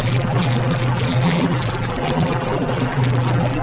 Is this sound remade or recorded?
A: remade